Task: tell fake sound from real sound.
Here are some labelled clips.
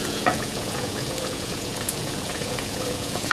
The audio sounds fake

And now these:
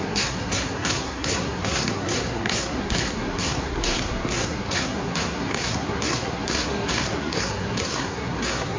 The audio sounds fake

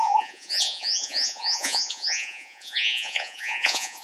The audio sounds fake